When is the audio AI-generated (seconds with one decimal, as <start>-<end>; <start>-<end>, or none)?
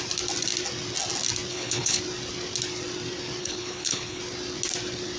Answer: 1.5-2.0; 3.4-4.2